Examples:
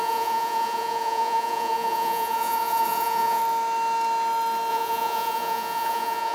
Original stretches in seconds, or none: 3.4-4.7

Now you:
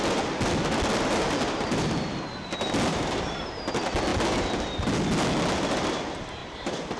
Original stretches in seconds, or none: 0.0-2.9; 3.5-6.4